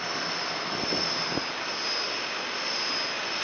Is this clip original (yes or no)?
yes